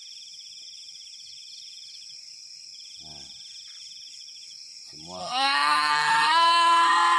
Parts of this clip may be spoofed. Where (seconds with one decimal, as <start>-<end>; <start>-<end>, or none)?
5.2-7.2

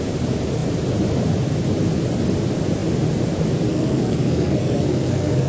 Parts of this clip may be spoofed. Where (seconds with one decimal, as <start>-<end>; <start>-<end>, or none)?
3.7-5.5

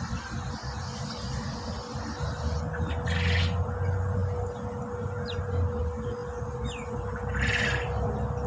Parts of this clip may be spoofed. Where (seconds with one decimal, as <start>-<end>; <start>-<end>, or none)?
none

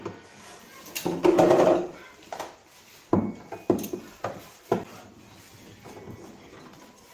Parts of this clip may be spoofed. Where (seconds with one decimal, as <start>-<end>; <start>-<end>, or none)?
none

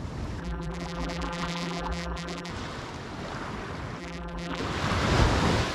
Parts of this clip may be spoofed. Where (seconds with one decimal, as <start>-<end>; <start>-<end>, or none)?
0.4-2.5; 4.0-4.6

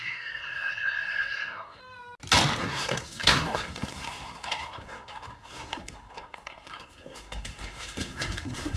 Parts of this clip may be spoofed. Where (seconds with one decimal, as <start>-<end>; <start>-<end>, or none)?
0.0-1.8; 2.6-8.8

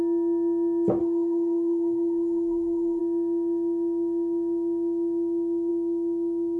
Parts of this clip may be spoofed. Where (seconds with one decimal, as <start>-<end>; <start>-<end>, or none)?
1.0-3.0